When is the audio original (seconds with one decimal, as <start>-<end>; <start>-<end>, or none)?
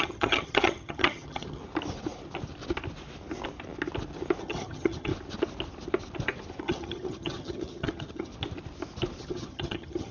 1.6-4.4; 5.1-6.6; 8.3-9.2